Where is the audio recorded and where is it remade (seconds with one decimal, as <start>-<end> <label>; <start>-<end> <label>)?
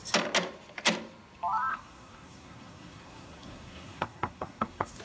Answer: 0.0-1.7 recorded; 1.7-5.0 remade